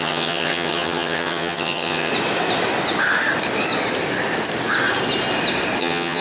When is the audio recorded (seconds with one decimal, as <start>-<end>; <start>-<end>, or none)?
2.1-5.8